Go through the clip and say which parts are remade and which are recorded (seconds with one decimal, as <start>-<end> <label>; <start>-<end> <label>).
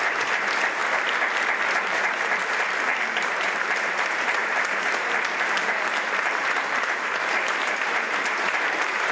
0.0-0.8 remade; 0.8-1.6 recorded; 1.6-2.4 remade; 2.4-3.2 recorded; 3.2-9.1 remade